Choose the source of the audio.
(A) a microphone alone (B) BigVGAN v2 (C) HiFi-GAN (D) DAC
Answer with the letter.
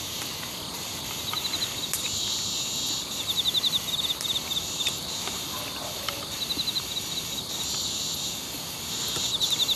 A